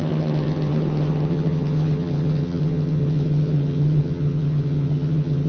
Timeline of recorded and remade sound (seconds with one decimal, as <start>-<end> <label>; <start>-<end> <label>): 0.0-5.5 remade